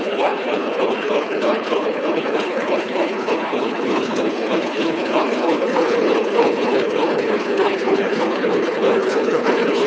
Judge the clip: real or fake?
fake